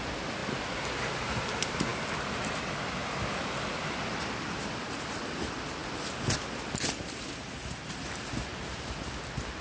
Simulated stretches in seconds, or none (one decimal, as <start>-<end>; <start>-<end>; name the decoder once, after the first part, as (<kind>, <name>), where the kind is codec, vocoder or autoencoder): none